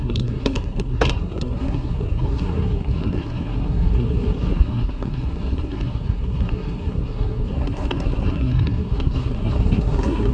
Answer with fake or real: fake